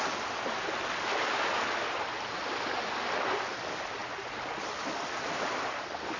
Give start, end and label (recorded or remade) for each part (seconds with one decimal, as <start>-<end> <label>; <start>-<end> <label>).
0.0-6.2 recorded